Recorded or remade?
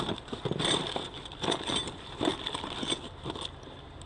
recorded